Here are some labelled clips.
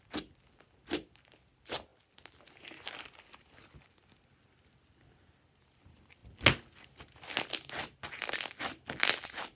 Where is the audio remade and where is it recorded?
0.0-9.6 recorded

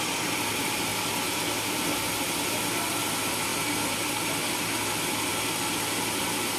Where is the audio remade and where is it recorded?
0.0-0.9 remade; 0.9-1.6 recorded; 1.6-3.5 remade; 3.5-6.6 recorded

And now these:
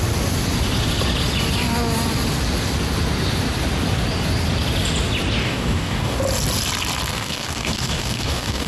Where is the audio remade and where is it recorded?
0.0-5.4 recorded; 5.4-6.2 remade; 6.2-7.1 recorded; 7.1-8.7 remade